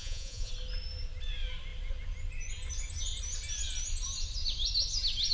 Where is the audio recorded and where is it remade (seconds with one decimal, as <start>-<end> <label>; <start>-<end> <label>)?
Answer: 0.0-0.5 remade; 0.5-5.3 recorded